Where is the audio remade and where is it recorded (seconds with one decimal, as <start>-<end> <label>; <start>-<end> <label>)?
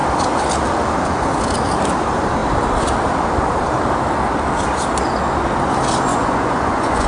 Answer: 0.0-6.1 recorded; 6.1-7.1 remade